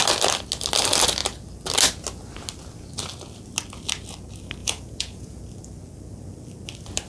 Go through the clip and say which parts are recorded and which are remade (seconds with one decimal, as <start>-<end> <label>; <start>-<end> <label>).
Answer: 0.0-4.6 recorded; 4.6-5.4 remade; 5.4-7.1 recorded